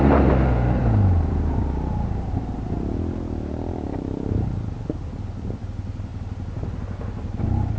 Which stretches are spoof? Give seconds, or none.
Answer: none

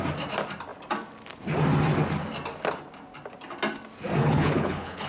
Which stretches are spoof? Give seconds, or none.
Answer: 4.2-5.1